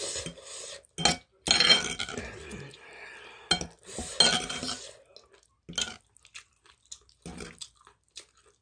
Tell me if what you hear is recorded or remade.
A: recorded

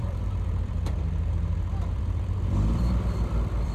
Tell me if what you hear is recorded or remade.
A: remade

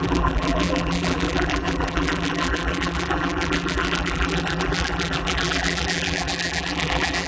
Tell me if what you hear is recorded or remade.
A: remade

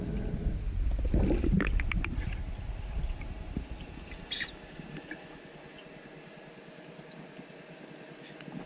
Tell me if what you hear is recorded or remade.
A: recorded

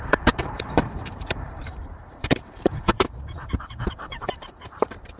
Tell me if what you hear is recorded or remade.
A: remade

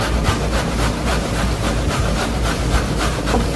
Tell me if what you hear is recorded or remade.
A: remade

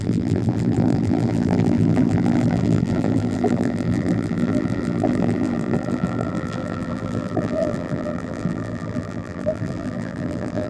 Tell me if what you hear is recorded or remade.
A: remade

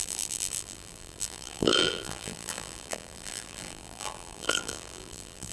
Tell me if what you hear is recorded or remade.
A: remade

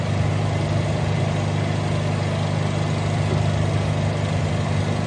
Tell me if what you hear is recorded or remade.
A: recorded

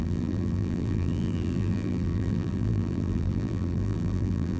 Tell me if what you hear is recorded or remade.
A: remade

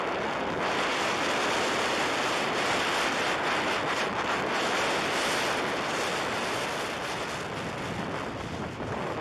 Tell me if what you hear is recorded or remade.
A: recorded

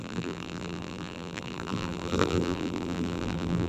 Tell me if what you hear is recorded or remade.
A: remade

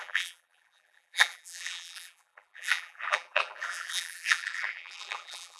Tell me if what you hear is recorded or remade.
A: remade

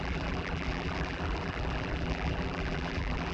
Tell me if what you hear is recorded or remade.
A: remade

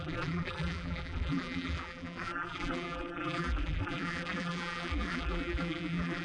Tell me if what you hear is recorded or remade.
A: remade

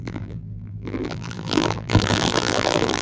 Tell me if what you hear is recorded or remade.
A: remade